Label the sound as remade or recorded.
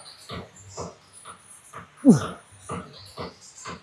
recorded